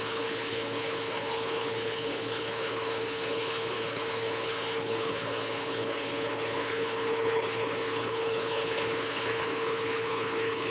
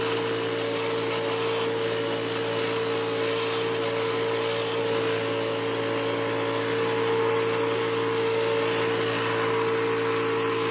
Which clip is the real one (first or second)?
second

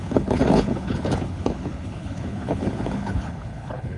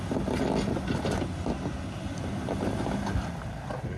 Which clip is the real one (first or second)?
second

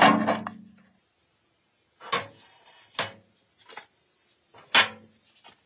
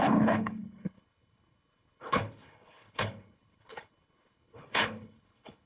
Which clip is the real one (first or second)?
first